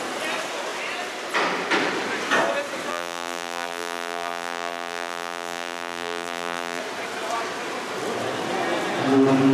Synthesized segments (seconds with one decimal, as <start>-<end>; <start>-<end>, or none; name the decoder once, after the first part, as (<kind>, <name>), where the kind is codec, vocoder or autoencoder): 2.9-6.8 (vocoder, BigVGAN v2)